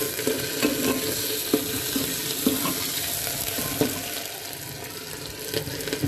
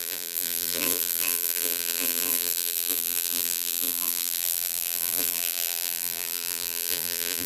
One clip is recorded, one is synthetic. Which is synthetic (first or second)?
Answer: second